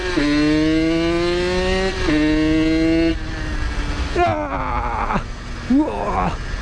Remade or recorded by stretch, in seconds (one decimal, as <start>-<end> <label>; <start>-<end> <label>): 0.0-6.6 recorded